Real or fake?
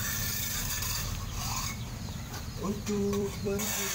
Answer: fake